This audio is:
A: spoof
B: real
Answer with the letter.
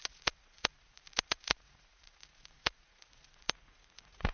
A